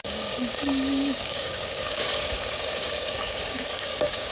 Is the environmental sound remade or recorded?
remade